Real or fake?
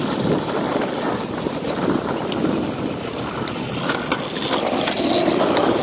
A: real